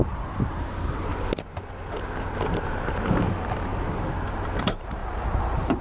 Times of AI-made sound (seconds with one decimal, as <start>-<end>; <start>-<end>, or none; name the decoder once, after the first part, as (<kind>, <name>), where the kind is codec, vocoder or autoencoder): 0.0-1.1 (vocoder, BigVGAN v2); 2.4-3.7; 4.6-5.0